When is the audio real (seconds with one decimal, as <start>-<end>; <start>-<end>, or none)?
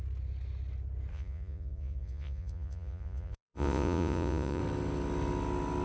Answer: 0.0-1.1; 4.6-5.8